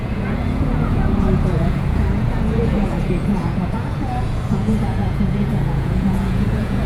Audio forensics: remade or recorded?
remade